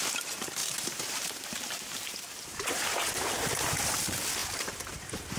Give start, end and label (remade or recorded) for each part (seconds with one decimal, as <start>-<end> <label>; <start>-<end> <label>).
0.0-0.6 recorded; 0.6-3.8 remade; 3.8-4.4 recorded; 4.4-5.4 remade